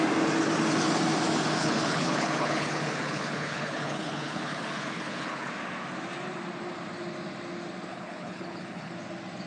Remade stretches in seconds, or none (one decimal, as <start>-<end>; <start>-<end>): 1.6-5.5; 7.9-8.9